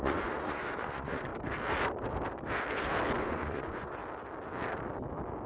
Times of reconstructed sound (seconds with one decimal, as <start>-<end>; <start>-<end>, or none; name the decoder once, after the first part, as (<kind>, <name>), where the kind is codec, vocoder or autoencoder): 0.0-1.3 (vocoder, Vocos); 3.2-4.0